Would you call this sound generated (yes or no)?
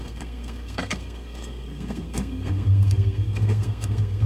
yes